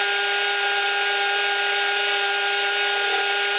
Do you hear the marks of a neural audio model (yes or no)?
no